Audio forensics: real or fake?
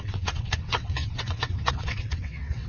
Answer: fake